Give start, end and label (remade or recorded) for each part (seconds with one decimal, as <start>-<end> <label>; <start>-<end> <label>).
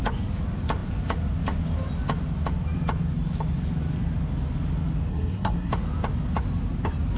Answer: 0.0-5.1 recorded; 5.1-5.7 remade; 5.7-7.2 recorded